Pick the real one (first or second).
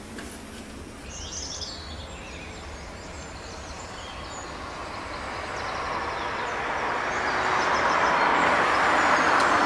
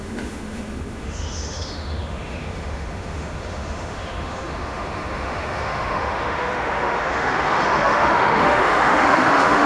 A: first